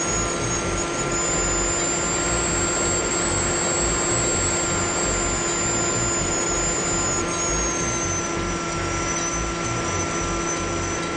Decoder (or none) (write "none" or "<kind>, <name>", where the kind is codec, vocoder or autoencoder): none